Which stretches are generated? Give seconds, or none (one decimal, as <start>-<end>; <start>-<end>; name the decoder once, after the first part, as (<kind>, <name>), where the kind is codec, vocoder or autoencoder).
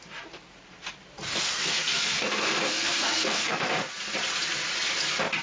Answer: 1.3-3.7 (codec, SNAC)